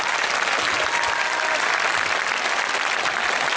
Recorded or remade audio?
recorded